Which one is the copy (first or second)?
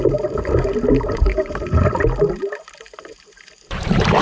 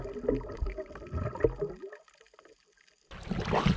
first